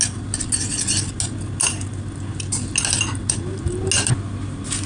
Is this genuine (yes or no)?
yes